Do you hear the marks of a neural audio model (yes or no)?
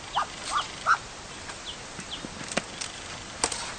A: no